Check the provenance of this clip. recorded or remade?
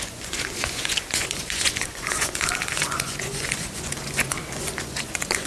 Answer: remade